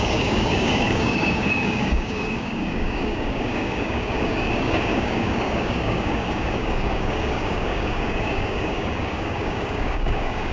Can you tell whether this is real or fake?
fake